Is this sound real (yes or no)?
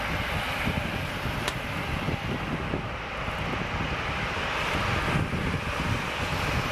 yes